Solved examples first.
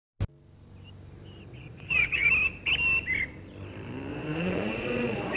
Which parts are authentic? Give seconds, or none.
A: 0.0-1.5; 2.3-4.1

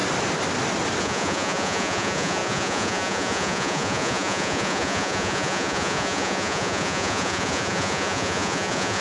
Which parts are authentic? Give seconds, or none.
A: 0.0-1.0

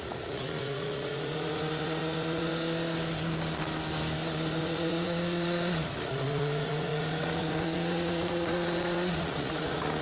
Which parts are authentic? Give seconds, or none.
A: 2.5-4.6

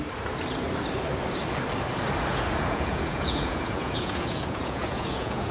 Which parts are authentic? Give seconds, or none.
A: 0.0-2.3

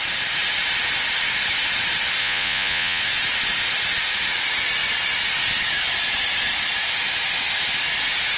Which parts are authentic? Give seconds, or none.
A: 0.0-2.2; 3.0-8.4

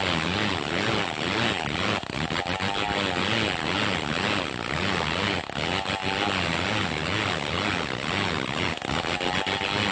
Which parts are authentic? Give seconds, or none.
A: 0.0-9.9